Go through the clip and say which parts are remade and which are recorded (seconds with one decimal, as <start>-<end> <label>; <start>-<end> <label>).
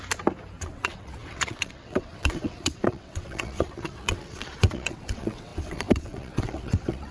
0.0-0.6 recorded; 0.6-7.1 remade